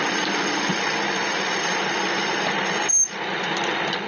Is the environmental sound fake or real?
real